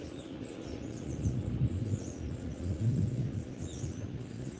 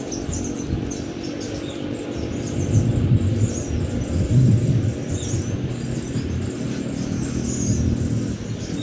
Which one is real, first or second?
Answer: second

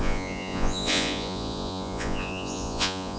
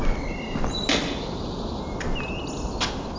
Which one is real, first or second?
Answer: second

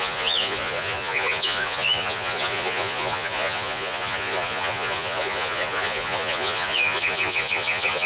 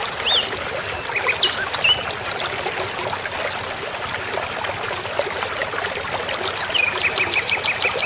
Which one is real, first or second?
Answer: second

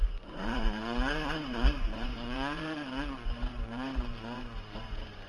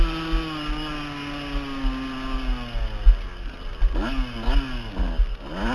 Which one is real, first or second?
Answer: second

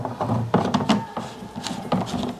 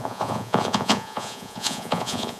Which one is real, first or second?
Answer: first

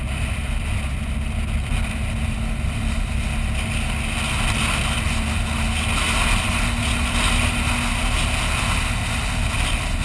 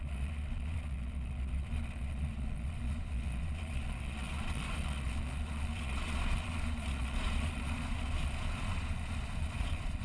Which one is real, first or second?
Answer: first